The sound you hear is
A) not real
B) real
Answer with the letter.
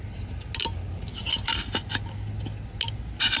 B